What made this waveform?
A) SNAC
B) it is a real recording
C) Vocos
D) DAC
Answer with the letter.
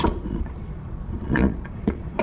C